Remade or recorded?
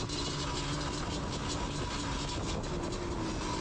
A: recorded